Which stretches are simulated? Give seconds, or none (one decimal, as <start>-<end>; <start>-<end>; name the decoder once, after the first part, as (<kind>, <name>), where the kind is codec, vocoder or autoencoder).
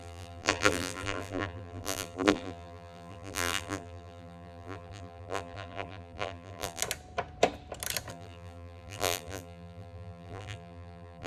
0.0-6.8 (vocoder, BigVGAN v2); 8.1-11.3